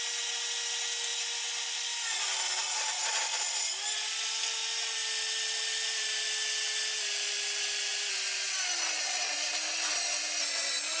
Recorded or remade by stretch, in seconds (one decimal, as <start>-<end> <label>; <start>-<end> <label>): 0.0-11.0 recorded